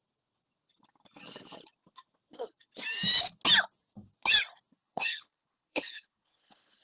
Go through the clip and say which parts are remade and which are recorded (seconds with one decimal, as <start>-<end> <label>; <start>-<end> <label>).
0.0-4.7 recorded; 4.7-6.8 remade